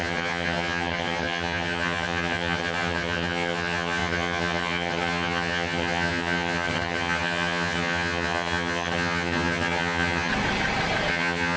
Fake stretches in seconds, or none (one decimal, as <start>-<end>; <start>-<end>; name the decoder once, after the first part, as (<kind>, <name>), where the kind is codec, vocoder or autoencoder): 0.0-10.3 (vocoder, HiFi-GAN); 11.1-11.6